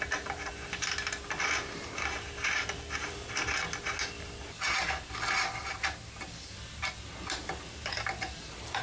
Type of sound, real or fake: real